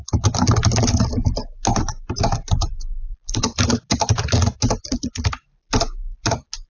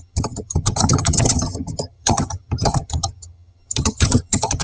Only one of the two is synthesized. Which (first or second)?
second